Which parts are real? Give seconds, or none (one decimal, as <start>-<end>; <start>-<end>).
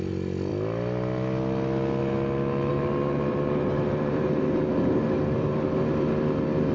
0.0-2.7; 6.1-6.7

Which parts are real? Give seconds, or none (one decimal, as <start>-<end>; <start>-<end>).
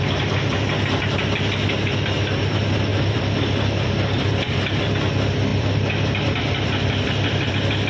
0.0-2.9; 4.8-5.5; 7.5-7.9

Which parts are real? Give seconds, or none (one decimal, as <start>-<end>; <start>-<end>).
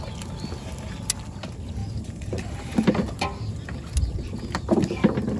0.0-1.8; 2.7-5.4